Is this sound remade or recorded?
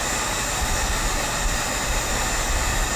recorded